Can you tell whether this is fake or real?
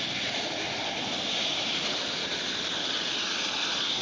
real